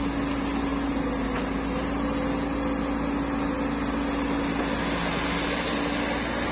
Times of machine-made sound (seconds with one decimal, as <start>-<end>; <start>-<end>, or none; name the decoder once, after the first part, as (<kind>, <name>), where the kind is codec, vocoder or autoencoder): none